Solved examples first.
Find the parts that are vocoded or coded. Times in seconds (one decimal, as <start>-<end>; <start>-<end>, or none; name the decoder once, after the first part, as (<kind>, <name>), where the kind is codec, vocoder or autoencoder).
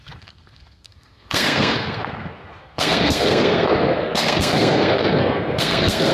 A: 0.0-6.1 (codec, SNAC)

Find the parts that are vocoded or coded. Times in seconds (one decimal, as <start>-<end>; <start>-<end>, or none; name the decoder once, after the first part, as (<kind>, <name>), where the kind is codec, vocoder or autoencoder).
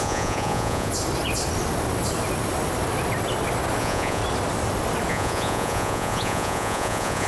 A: 0.0-0.9 (vocoder, Vocos); 3.8-4.2; 5.1-7.3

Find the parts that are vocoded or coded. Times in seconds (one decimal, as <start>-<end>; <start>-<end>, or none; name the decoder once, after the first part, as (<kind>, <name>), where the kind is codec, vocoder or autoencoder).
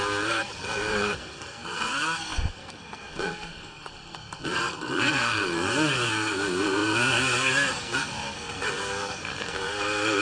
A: 0.0-10.2 (codec, SNAC)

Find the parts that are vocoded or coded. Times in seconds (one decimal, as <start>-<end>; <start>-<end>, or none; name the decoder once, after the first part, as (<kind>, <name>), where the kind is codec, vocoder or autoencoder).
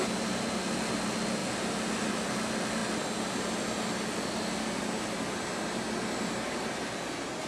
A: none